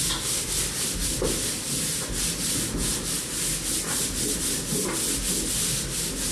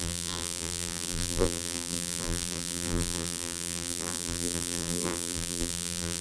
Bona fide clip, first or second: first